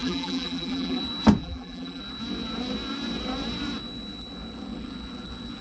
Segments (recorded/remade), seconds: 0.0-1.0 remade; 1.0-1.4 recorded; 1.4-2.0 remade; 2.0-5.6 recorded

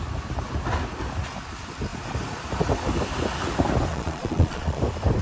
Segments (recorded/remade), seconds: 0.0-3.9 recorded; 3.9-4.8 remade; 4.8-5.2 recorded

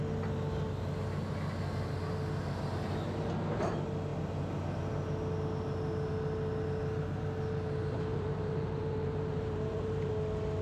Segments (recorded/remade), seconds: 0.0-8.1 recorded; 8.1-10.1 remade; 10.1-10.6 recorded

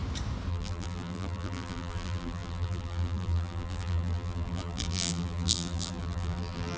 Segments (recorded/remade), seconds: 0.0-0.5 recorded; 0.5-6.8 remade

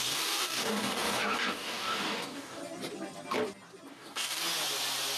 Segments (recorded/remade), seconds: 0.0-2.6 remade; 2.6-3.9 recorded; 3.9-4.4 remade; 4.4-5.2 recorded

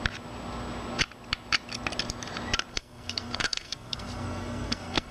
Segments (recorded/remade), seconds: 0.0-2.7 recorded; 2.7-5.1 remade